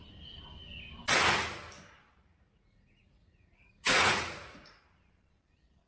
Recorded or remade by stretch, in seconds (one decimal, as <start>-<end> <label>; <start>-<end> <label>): 0.0-2.3 recorded; 2.3-4.8 remade; 4.8-5.9 recorded